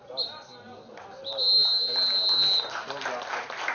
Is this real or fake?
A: real